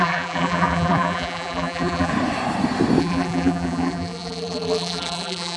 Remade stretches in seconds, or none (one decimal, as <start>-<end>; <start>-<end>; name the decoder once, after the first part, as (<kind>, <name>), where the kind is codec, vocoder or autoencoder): 0.0-2.1 (vocoder, BigVGAN v2); 3.0-5.6